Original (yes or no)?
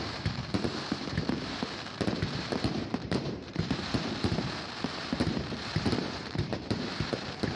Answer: no